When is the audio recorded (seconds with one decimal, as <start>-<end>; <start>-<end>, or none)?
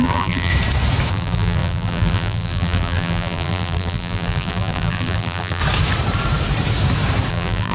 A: 0.5-1.1; 5.6-7.3